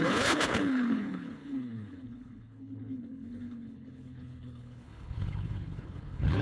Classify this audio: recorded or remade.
remade